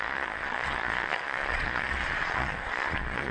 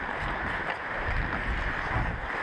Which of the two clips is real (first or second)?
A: second